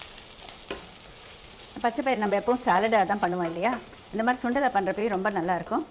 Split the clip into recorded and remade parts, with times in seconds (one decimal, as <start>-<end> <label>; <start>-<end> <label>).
0.0-1.1 recorded; 1.1-4.6 remade; 4.6-5.9 recorded